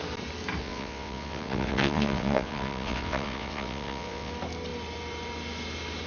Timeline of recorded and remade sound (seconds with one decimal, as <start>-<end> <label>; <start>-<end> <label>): 0.0-0.6 recorded; 0.6-4.3 remade; 4.3-6.1 recorded